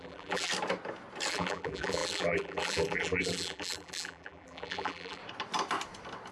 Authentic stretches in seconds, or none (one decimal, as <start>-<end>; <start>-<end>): 0.5-1.3; 5.2-6.3